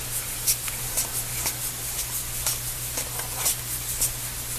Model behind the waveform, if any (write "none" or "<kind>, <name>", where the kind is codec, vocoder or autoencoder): none